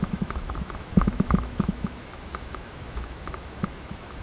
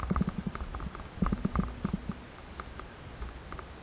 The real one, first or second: second